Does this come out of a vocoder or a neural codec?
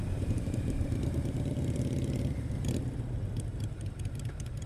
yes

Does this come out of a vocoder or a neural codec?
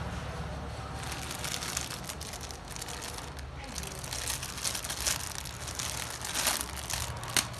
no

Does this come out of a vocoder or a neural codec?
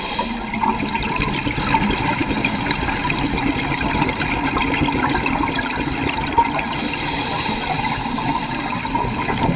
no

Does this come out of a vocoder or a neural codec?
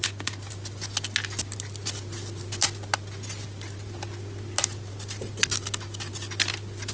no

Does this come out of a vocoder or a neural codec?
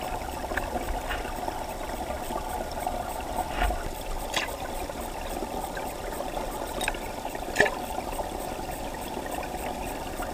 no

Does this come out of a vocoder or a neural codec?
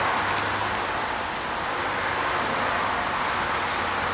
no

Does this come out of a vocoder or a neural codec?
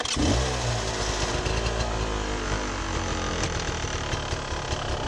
no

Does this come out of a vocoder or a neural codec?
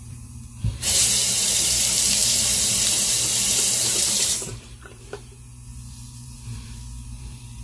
yes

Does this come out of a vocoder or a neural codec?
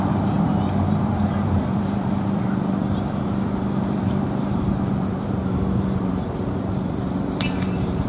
yes